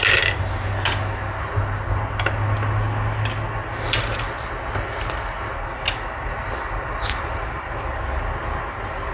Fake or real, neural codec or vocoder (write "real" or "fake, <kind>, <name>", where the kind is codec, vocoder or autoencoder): real